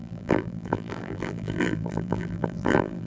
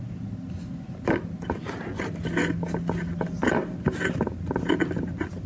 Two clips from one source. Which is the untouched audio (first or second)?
second